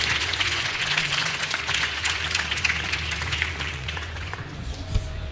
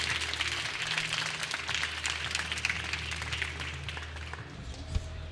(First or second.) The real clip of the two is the second